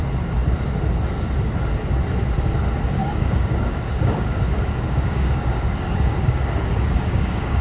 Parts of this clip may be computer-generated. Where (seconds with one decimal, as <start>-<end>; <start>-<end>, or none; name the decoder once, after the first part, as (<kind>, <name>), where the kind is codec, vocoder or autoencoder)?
3.0-7.6 (codec, DAC)